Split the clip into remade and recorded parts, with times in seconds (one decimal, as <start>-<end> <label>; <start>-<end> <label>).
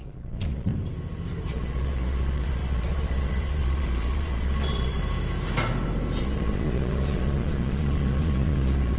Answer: 0.0-0.7 remade; 0.7-1.5 recorded; 1.5-5.0 remade; 5.0-6.2 recorded; 6.2-9.0 remade